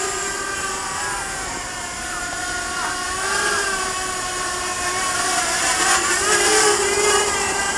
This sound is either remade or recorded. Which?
remade